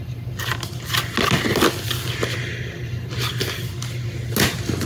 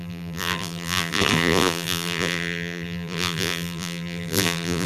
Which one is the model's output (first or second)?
second